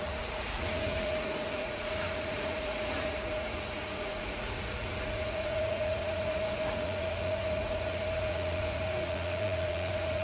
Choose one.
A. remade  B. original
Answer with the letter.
A